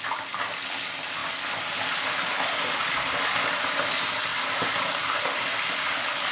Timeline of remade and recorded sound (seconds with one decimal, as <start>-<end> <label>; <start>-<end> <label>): 0.0-4.3 recorded; 4.3-5.0 remade; 5.0-6.3 recorded